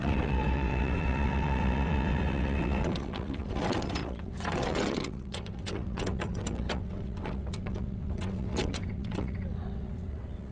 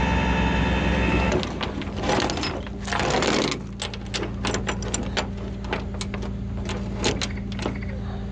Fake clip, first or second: first